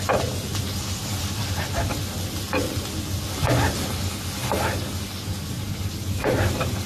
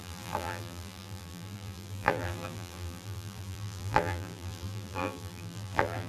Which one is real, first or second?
first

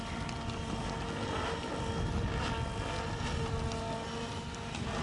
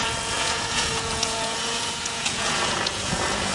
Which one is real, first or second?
first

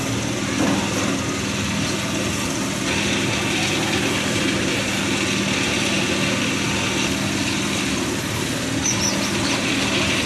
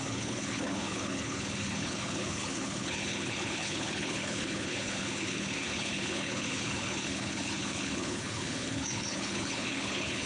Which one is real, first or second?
first